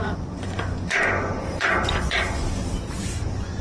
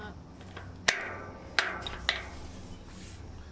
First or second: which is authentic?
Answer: second